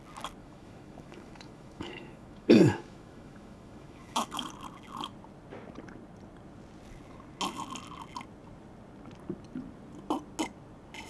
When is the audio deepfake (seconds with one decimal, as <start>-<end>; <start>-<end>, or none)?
0.4-4.5